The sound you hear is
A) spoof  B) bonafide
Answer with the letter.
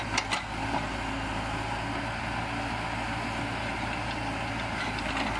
B